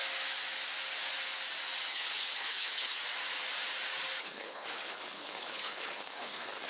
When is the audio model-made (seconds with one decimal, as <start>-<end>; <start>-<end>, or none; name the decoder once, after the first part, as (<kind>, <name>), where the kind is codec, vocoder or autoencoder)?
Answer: 1.9-3.0 (codec, HILCodec); 4.2-6.7